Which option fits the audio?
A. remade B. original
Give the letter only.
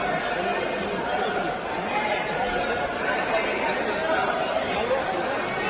B